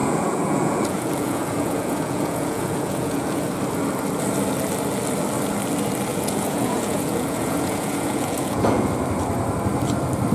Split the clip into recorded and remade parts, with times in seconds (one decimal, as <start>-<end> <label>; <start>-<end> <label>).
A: 0.0-3.4 remade; 3.4-6.1 recorded; 6.1-8.9 remade; 8.9-10.3 recorded